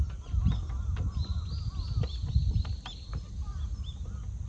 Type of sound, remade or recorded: recorded